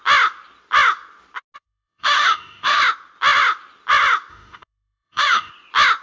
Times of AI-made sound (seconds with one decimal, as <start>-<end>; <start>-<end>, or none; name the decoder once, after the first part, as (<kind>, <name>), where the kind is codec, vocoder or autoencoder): 1.6-2.8 (autoencoder, DAC-VAE); 4.3-5.5